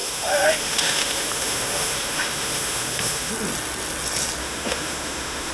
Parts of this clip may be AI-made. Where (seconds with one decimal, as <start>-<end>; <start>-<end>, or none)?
0.0-3.3; 4.4-5.5